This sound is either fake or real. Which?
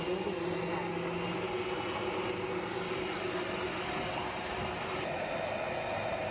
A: real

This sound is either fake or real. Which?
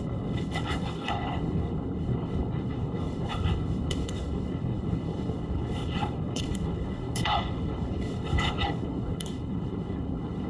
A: fake